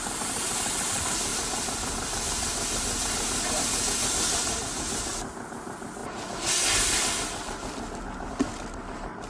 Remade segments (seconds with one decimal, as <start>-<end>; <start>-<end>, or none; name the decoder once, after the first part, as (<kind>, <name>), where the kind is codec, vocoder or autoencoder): none